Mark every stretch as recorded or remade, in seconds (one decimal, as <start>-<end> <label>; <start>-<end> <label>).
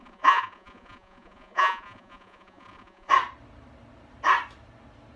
0.0-3.1 remade; 3.1-5.2 recorded